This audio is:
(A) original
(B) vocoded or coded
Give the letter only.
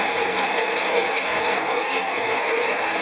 B